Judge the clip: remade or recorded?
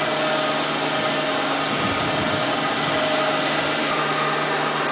recorded